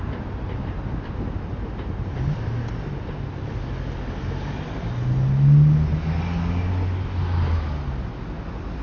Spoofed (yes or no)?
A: no